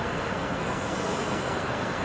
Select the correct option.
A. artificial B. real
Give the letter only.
A